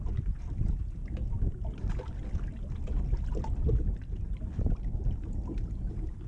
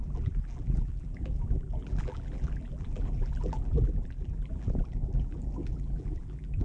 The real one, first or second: first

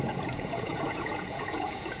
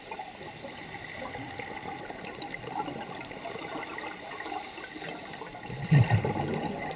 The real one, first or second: second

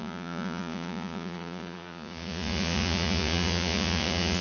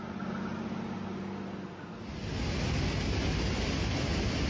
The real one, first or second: second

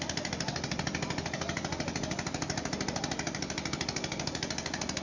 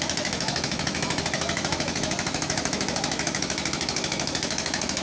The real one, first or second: first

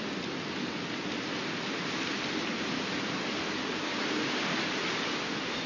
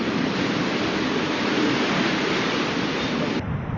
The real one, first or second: first